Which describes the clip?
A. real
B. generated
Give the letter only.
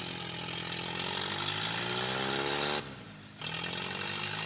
A